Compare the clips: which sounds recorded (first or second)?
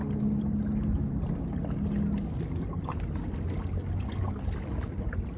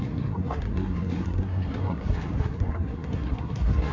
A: first